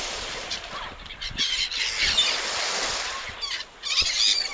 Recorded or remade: recorded